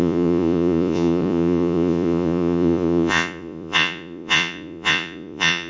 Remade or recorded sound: remade